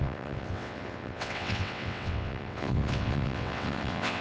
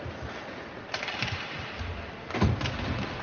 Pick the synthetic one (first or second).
first